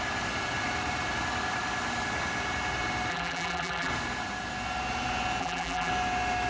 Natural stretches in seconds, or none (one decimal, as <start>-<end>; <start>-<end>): 0.0-3.1; 3.9-5.4; 5.9-6.5